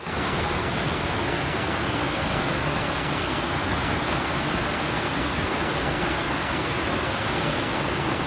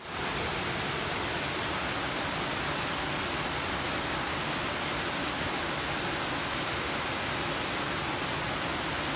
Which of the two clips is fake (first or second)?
first